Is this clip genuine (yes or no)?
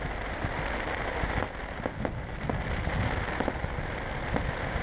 yes